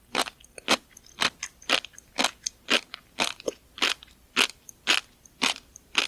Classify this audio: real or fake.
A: fake